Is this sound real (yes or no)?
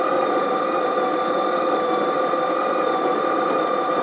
yes